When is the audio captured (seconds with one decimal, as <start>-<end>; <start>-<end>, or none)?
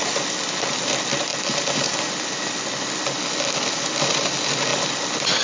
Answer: 0.0-5.4